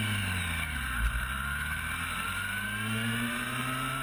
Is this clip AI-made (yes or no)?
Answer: no